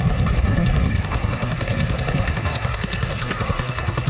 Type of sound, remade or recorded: remade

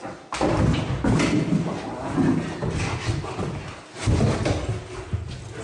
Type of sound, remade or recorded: recorded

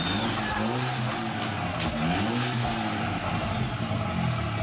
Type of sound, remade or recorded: recorded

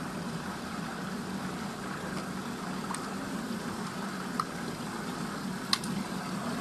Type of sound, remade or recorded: recorded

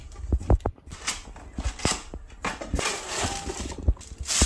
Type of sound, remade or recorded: recorded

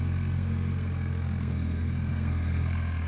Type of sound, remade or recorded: remade